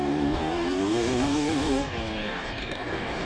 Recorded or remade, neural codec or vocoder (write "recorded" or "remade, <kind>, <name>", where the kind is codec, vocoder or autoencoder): remade, codec, DAC